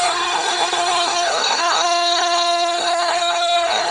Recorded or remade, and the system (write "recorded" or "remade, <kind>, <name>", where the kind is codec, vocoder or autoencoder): remade, codec, SNAC